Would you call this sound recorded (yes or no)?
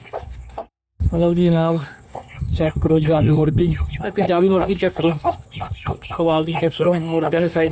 no